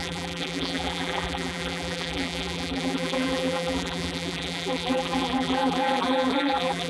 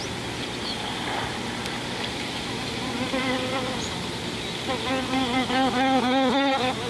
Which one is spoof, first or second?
first